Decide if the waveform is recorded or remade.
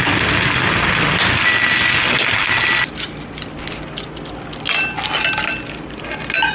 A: recorded